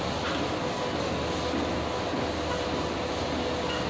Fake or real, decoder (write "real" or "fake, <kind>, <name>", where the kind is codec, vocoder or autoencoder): real